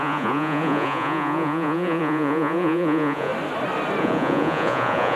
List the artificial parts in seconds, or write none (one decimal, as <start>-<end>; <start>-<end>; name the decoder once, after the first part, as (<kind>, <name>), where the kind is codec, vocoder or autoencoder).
0.0-3.3 (vocoder, Vocos); 4.0-5.2